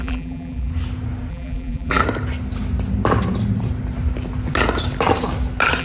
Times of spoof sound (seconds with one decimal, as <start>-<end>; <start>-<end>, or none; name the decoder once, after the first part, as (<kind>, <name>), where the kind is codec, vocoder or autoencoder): 0.0-0.7 (vocoder, BigVGAN v2); 1.3-2.0